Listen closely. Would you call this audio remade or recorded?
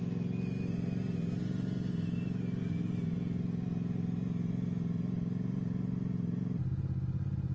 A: recorded